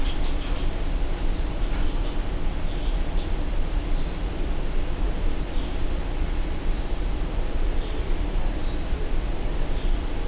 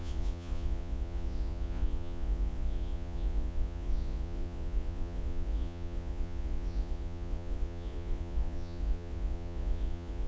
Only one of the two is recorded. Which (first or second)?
first